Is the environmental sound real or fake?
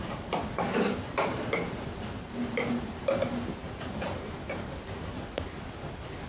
real